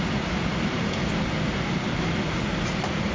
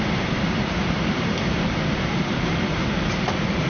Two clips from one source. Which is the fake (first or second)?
second